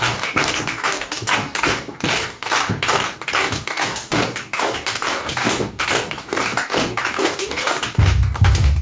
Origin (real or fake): fake